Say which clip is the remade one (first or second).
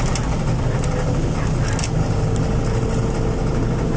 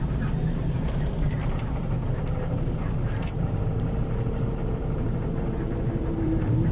second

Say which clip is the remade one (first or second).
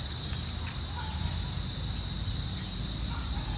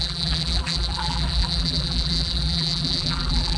second